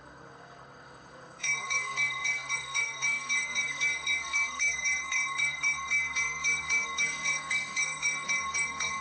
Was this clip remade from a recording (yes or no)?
yes